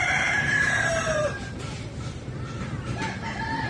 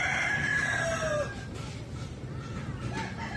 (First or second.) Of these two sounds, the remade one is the first